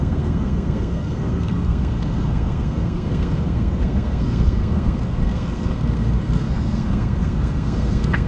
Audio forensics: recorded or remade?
remade